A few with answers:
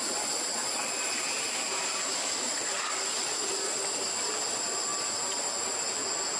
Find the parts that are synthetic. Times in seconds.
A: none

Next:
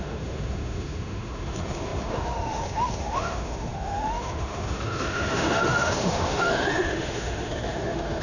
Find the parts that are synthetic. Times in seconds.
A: 0.0-8.2 (autoencoder, DAC-VAE)

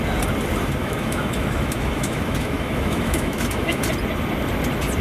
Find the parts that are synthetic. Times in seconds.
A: 0.8-3.8 (autoencoder, DAC-VAE)

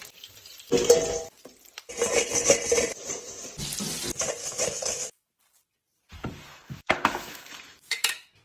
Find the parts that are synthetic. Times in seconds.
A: 4.4-5.4 (autoencoder, DAC-VAE); 6.5-8.4